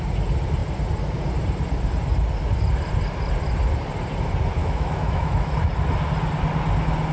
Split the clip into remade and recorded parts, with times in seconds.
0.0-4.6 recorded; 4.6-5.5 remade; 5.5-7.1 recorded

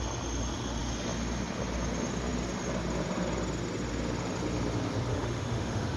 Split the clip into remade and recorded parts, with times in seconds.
0.0-5.1 recorded; 5.1-6.0 remade